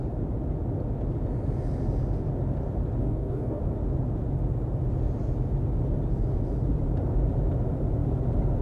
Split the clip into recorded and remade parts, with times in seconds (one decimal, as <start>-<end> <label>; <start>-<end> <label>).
0.0-3.0 recorded; 3.0-3.6 remade; 3.6-8.6 recorded